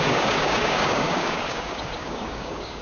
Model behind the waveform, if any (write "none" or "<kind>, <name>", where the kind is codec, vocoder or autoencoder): codec, DAC